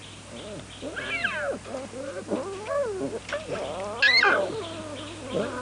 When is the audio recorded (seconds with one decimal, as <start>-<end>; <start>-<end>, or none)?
0.0-5.6